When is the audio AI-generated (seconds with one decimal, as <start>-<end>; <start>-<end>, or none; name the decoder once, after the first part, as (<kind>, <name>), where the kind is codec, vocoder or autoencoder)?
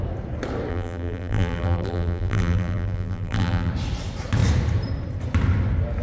0.7-3.7 (vocoder, BigVGAN v2)